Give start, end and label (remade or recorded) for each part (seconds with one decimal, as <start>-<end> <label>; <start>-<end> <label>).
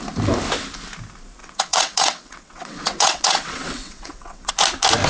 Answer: 0.0-1.4 recorded; 1.4-4.5 remade; 4.5-5.1 recorded